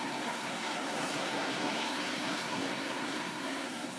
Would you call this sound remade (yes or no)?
yes